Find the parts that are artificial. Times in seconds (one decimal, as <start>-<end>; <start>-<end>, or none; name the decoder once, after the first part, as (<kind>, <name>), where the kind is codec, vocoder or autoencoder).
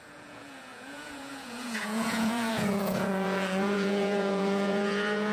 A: 0.0-5.3 (vocoder, Vocos)